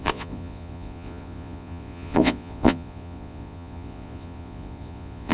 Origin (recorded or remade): remade